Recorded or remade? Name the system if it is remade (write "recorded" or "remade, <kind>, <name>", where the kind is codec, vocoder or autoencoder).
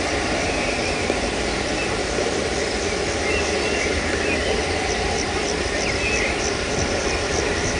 recorded